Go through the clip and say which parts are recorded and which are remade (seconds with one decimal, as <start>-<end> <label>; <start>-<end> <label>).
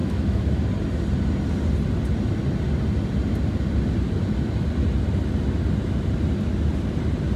0.0-0.6 remade; 0.6-7.4 recorded